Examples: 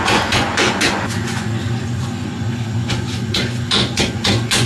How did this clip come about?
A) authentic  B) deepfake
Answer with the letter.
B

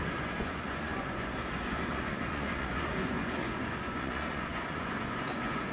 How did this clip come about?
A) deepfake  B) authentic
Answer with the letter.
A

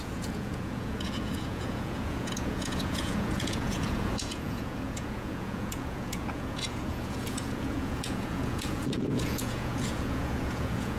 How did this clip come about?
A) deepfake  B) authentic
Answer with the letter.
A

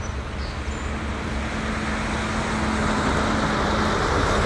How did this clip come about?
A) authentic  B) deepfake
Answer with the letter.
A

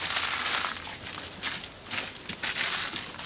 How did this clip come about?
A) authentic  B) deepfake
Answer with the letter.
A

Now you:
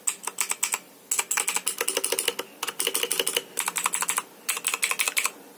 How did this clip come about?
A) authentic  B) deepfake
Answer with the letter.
A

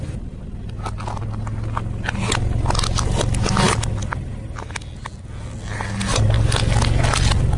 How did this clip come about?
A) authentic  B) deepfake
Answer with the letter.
A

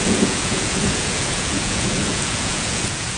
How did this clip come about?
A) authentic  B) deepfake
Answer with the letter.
B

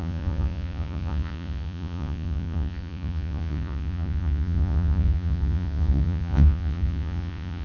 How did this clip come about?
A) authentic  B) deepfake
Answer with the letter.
B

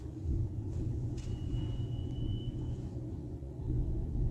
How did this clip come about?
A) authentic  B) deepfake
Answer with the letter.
B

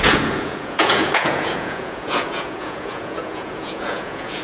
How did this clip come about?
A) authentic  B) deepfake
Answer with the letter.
B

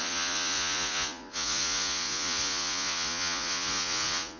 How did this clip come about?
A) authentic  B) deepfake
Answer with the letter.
B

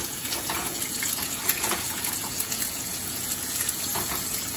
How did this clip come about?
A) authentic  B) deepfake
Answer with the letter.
B